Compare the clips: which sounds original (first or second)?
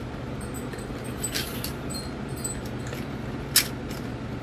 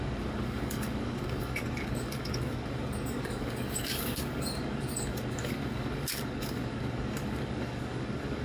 first